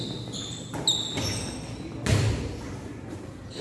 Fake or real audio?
real